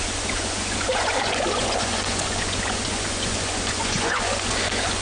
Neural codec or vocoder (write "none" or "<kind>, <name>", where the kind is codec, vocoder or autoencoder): vocoder, Vocos